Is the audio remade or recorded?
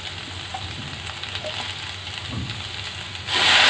recorded